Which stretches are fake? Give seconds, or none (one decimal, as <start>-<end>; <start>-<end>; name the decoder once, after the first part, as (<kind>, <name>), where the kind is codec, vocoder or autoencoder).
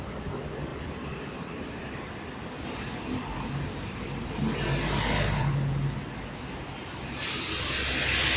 none